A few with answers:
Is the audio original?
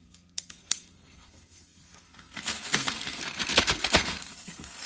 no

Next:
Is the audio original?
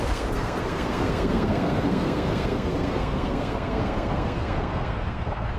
no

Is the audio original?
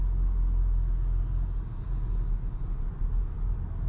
yes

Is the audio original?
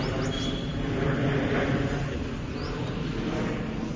yes